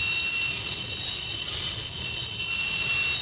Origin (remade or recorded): recorded